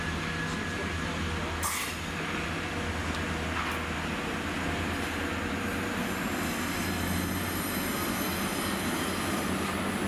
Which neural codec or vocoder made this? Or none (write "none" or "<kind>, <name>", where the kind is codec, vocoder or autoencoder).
none